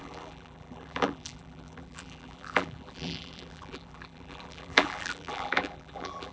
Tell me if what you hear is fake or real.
fake